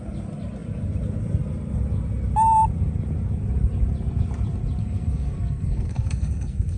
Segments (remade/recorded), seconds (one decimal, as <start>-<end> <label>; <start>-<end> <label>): 0.0-4.8 recorded; 4.8-6.8 remade